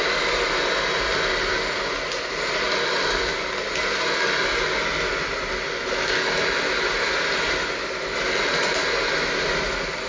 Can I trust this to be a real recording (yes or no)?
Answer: yes